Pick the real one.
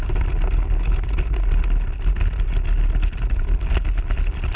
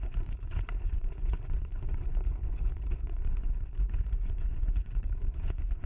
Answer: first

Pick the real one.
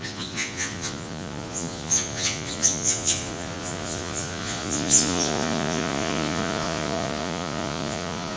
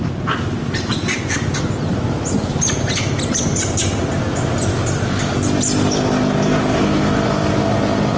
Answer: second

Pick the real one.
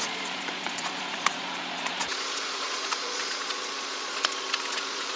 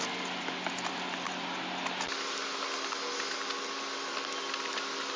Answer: second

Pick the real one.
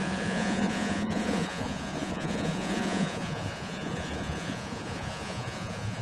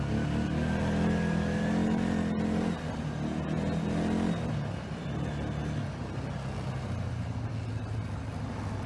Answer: second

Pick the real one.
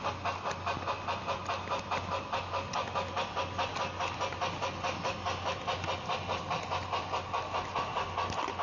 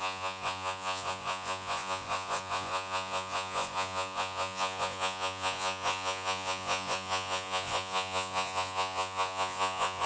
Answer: first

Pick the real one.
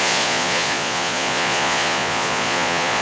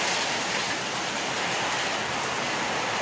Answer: second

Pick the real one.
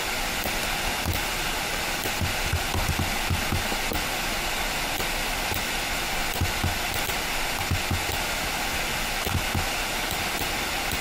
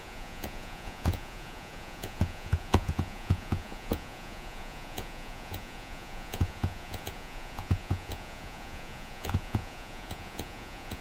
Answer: first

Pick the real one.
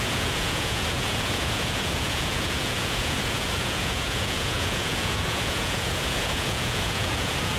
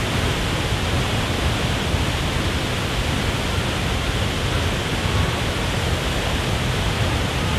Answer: second